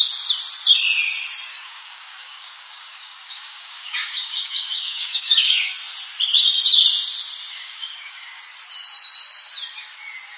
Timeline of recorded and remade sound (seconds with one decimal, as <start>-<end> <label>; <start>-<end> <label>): 0.0-1.5 recorded; 1.5-5.7 remade; 5.7-7.5 recorded; 7.5-8.4 remade; 8.4-10.4 recorded